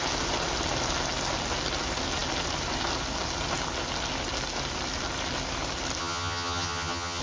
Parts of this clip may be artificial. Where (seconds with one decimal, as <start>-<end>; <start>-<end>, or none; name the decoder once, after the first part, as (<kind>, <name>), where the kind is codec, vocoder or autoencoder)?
6.0-7.2 (vocoder, HiFi-GAN)

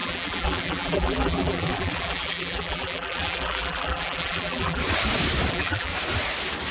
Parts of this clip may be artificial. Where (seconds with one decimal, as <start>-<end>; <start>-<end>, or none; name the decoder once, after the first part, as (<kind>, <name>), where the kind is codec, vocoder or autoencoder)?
0.0-4.8 (vocoder, BigVGAN v2); 5.5-5.9

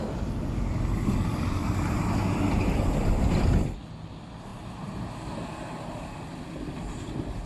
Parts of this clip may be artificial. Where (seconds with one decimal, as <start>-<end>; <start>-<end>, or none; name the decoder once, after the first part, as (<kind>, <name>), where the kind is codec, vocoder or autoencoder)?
4.5-5.1 (vocoder, BigVGAN v2)

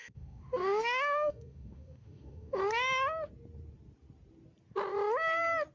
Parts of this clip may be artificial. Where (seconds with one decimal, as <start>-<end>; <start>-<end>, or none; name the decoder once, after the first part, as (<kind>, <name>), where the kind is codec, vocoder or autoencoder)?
0.0-2.6 (autoencoder, DAC-VAE)

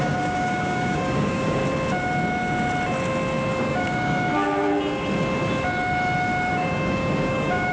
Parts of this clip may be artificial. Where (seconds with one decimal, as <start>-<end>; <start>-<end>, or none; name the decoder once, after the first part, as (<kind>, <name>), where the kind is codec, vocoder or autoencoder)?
0.0-1.6 (codec, DAC); 3.6-4.3; 6.5-7.7

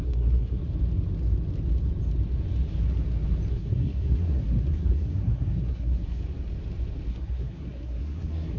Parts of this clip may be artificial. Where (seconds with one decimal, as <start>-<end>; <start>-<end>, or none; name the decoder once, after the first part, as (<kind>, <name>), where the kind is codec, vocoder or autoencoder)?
0.0-0.6 (codec, SNAC); 3.5-6.2; 7.1-8.6